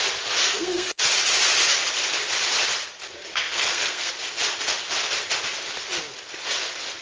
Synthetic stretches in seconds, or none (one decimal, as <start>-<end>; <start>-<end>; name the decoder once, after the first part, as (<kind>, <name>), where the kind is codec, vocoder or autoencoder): 0.4-1.0 (codec, SNAC); 3.3-4.1